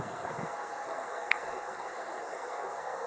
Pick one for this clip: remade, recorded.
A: remade